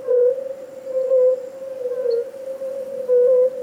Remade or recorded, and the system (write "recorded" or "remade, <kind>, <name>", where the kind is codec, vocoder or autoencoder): recorded